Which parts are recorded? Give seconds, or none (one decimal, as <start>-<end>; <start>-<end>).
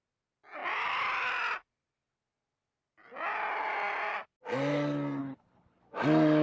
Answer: 0.0-5.2; 5.8-6.4